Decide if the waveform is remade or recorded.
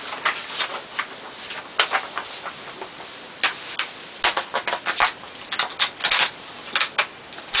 recorded